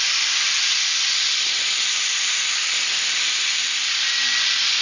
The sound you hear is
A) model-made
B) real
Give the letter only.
A